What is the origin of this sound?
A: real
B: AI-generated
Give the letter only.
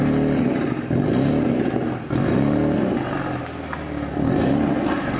A